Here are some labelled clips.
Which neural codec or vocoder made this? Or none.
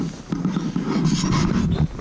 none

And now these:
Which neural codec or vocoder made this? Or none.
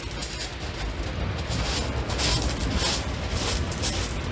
none